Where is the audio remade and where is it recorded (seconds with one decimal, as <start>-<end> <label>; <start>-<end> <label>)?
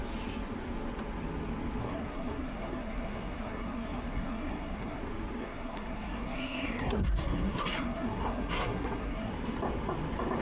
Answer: 0.0-1.8 recorded; 1.8-5.0 remade; 5.0-5.4 recorded; 5.4-9.3 remade; 9.3-10.4 recorded